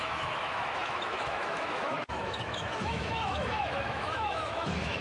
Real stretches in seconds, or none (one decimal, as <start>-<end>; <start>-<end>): none